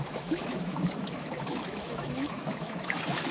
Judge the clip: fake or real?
fake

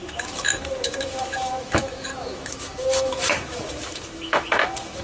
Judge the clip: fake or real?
fake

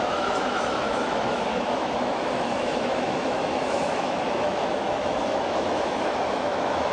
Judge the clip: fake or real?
fake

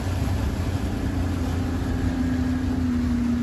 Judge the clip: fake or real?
real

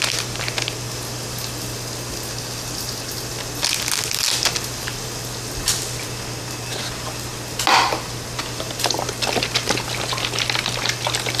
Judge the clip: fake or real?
real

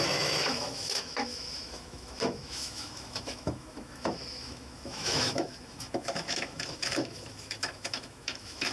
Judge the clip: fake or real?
fake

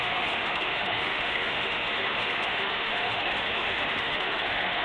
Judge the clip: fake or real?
fake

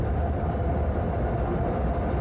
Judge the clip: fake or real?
real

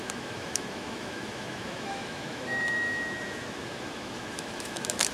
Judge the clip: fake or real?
fake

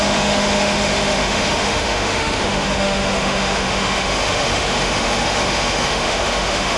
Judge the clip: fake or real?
fake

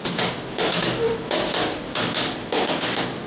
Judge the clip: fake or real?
real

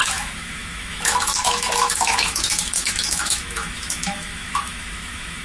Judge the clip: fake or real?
fake